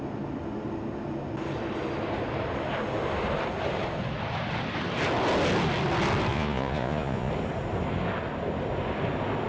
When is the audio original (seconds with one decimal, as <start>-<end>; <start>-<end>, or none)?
0.0-6.3; 7.3-9.5